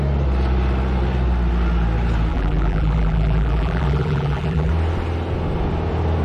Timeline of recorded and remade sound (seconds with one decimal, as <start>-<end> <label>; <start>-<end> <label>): 0.0-2.3 recorded; 2.3-4.7 remade; 4.7-6.2 recorded